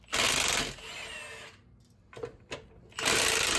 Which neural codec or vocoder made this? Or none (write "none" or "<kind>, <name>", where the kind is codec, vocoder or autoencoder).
none